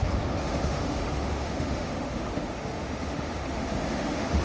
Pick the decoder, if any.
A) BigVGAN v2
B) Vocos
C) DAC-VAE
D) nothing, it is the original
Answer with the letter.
C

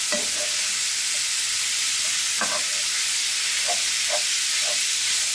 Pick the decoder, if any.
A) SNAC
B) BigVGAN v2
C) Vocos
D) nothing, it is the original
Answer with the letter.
B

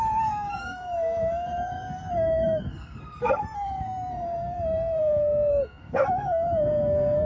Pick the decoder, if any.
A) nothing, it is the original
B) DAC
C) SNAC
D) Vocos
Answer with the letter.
C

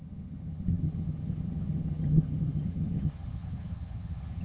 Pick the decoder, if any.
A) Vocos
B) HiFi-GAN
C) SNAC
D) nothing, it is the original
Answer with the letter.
B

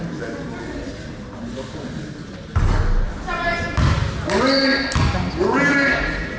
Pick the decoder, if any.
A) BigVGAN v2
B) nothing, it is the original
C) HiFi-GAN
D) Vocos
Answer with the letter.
B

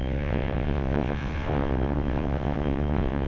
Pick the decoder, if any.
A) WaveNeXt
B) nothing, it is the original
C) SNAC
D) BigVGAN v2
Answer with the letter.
A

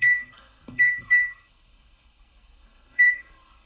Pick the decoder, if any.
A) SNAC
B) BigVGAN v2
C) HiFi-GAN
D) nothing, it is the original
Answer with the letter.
A